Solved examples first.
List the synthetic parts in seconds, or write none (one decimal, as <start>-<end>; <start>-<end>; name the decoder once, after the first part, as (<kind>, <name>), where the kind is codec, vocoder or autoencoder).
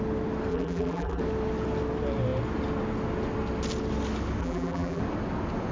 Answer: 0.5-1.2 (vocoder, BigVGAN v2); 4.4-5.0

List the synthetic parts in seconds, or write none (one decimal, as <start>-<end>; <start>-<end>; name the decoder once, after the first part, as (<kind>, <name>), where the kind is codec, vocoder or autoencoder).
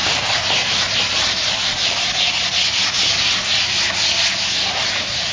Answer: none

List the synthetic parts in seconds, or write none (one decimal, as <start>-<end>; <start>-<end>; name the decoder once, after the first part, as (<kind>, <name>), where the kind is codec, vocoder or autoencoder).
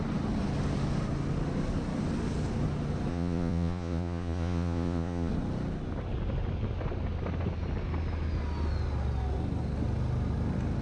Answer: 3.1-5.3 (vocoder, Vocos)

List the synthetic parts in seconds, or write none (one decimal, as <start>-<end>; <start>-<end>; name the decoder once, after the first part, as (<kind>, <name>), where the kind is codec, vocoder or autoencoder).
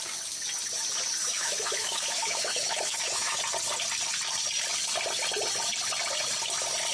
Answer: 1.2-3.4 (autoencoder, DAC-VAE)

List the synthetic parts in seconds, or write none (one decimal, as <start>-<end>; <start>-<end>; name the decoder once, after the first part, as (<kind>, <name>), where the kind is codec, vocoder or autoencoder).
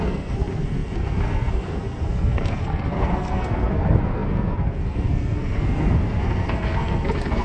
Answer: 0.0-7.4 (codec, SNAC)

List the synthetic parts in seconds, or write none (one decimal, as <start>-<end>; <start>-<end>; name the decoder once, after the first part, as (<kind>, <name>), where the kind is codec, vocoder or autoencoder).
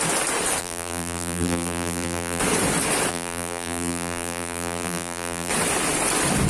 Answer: 0.6-2.4 (vocoder, BigVGAN v2); 3.1-5.5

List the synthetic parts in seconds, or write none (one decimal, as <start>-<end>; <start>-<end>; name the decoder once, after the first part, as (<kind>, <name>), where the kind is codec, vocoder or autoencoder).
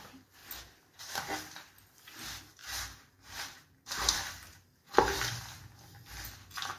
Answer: 2.6-5.2 (vocoder, BigVGAN v2)